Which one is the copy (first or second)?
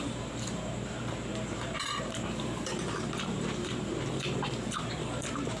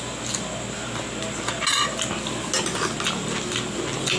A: first